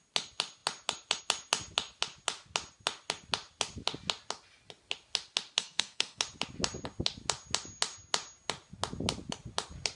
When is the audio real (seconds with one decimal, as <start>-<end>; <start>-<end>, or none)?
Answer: 0.0-5.6; 6.2-10.0